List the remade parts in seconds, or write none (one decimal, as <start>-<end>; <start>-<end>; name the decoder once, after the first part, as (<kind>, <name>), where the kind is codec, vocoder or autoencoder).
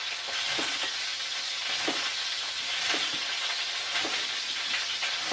none